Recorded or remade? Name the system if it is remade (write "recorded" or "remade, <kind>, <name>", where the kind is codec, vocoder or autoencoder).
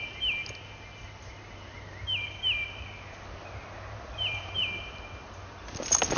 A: recorded